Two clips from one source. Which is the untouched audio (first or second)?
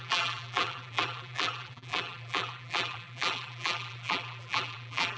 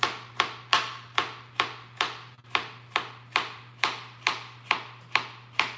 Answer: second